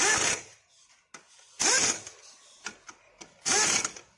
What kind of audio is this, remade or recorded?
recorded